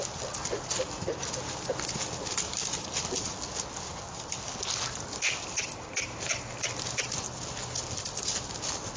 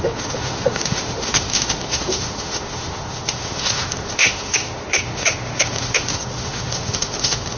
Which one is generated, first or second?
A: second